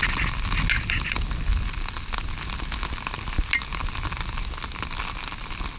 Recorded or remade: recorded